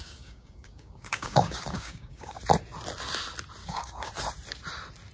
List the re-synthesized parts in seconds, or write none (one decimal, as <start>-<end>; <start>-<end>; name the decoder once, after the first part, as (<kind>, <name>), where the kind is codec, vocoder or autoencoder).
0.0-2.4 (codec, DAC); 3.6-4.1